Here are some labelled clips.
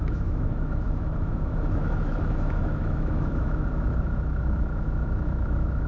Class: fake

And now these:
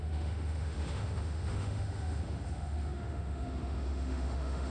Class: fake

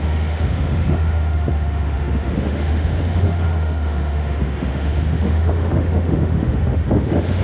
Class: fake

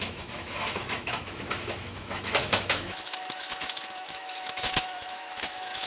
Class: fake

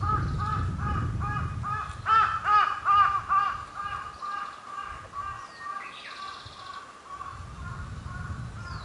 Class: real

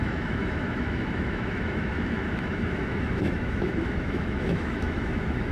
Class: fake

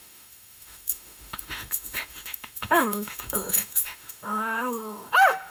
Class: fake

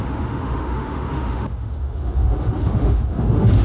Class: fake